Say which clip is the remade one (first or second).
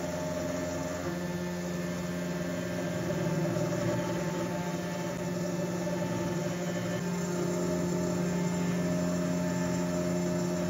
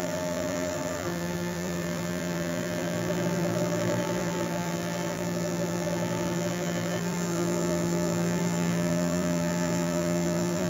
second